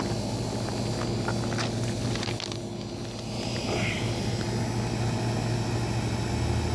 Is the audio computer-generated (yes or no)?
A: no